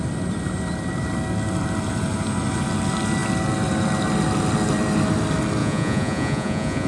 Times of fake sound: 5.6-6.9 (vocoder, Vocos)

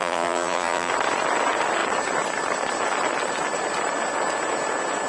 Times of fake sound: 0.0-0.9 (vocoder, BigVGAN v2)

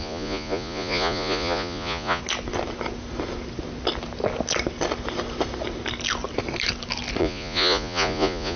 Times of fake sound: 0.0-2.2 (vocoder, Vocos); 7.2-8.6

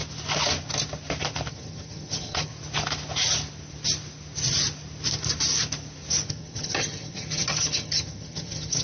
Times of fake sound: 1.5-2.5 (vocoder, HiFi-GAN); 6.3-8.8

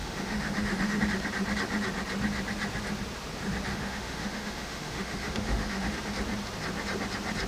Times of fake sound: 0.0-1.0 (autoencoder, DAC-VAE); 3.7-6.0

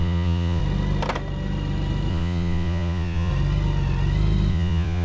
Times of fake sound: 0.0-0.6 (vocoder, Vocos); 2.1-3.3; 4.5-5.0

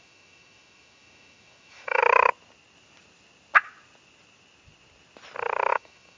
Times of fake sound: 0.0-2.0 (autoencoder, DAC-VAE); 5.7-6.2